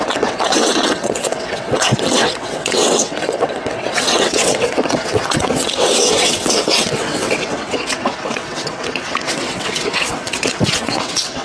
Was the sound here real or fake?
fake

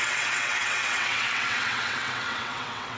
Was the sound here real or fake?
fake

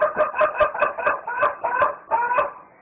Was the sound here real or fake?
real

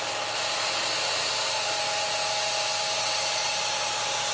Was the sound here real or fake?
real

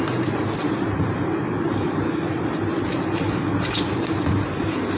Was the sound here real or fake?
real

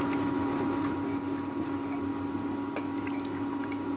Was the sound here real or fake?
real